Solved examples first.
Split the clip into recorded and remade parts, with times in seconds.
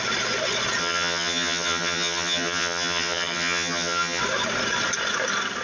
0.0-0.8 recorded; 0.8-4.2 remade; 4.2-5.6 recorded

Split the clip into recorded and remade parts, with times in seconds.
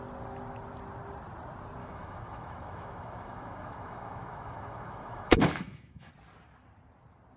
0.0-1.8 recorded; 1.8-6.1 remade; 6.1-7.4 recorded